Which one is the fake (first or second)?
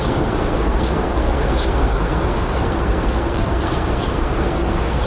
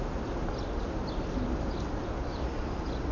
first